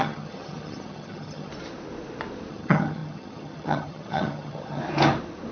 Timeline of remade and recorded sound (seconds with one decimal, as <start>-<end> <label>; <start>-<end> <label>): 0.0-1.5 remade; 1.5-2.5 recorded; 2.5-4.8 remade; 4.8-5.5 recorded